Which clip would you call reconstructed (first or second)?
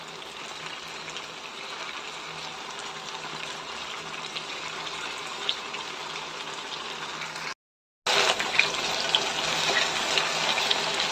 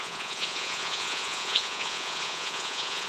second